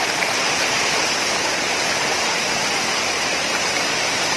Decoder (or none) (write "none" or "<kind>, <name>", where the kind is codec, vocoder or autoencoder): none